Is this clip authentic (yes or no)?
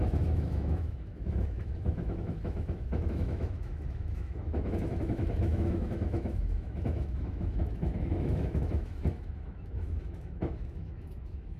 no